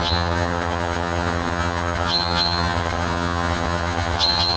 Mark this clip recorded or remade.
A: remade